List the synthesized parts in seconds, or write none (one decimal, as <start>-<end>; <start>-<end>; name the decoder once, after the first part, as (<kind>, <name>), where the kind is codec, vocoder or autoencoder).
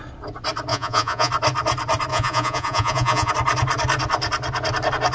0.7-1.3 (vocoder, Vocos); 2.1-3.3